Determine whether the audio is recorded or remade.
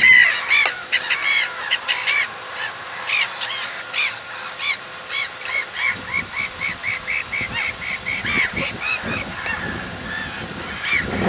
recorded